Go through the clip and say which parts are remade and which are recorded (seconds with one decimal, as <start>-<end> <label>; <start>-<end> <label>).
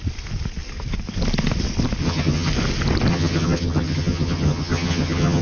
0.0-2.0 recorded; 2.0-2.5 remade; 2.5-3.1 recorded; 3.1-5.4 remade